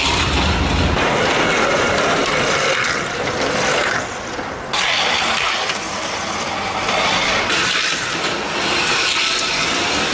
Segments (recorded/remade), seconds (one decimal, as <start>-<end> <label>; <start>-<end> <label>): 0.0-10.1 recorded